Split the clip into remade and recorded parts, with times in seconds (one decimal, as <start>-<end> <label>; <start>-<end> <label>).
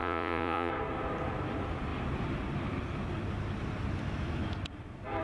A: 0.0-0.7 remade; 0.7-5.2 recorded